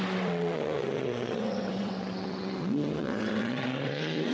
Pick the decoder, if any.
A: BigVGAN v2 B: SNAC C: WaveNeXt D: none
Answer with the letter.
C